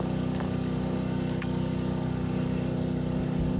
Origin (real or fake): fake